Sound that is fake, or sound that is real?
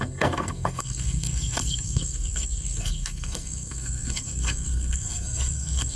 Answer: fake